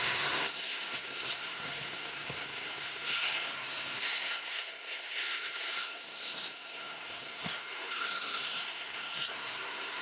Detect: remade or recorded remade